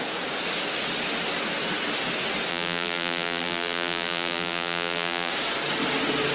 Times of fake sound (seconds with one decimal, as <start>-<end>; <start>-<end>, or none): 2.5-5.3